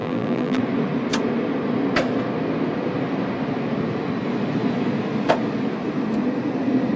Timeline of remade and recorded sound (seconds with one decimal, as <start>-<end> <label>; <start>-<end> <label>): 0.0-0.6 remade; 0.6-7.0 recorded